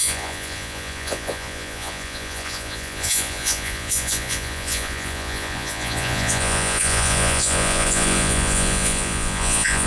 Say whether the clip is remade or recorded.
remade